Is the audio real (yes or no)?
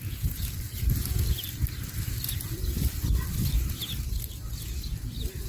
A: yes